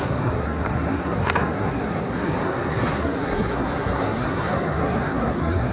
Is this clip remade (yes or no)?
yes